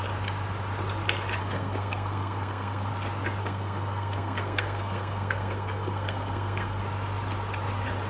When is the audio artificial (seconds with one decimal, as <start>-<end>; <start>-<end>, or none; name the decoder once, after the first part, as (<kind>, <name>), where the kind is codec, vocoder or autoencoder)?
1.4-2.9 (codec, SNAC); 3.4-6.8